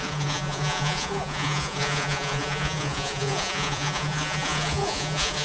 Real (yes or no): no